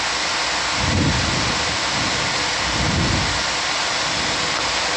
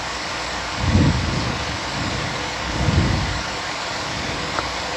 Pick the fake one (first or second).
second